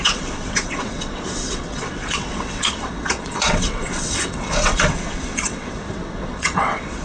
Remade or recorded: remade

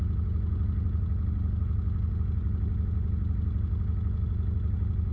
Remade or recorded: recorded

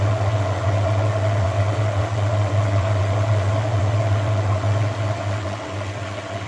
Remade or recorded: remade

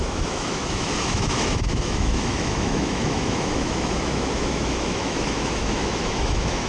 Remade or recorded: remade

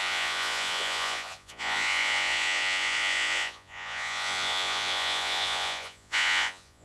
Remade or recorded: remade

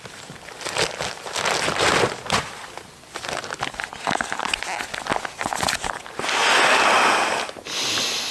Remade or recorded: recorded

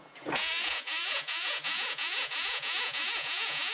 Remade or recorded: remade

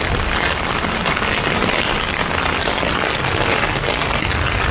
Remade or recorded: recorded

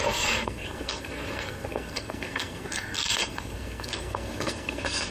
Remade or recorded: remade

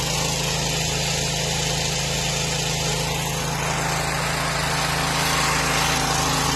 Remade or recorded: recorded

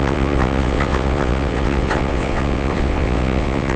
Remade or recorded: remade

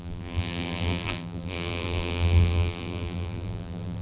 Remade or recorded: remade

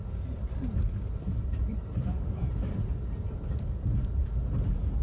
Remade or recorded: recorded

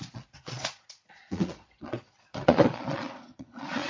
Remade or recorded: remade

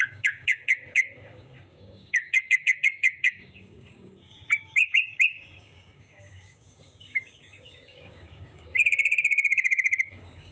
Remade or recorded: remade